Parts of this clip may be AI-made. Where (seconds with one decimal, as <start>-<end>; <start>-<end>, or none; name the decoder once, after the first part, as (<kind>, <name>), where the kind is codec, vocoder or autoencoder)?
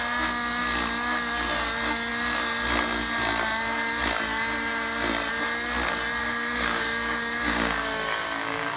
6.2-8.8 (codec, DAC)